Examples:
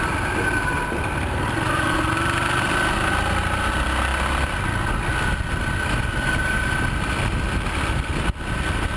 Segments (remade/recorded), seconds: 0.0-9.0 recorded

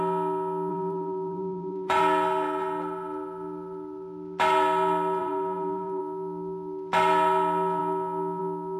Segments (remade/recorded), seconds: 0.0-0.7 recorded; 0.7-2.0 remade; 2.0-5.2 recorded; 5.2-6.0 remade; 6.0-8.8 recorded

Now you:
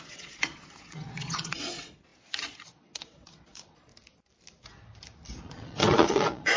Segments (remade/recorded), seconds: 0.0-3.9 remade; 3.9-5.4 recorded; 5.4-6.6 remade

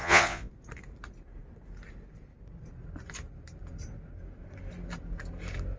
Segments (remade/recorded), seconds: 0.0-0.5 remade; 0.5-5.8 recorded

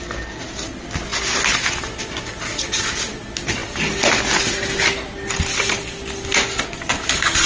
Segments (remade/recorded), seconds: 0.0-7.5 recorded

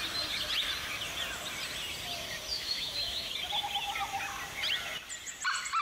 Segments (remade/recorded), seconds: 0.0-2.5 recorded; 2.5-3.3 remade; 3.3-5.8 recorded

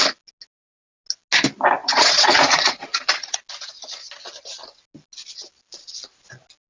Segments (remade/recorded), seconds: 0.0-1.8 recorded; 1.8-3.4 remade; 3.4-6.7 recorded